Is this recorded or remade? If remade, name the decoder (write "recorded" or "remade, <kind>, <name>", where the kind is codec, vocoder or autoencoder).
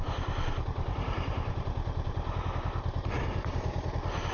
remade, vocoder, BigVGAN v2